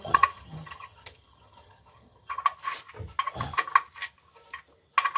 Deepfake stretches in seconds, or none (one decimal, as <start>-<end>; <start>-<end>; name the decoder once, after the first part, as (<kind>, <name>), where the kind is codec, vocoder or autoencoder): 0.0-2.4 (vocoder, HiFi-GAN)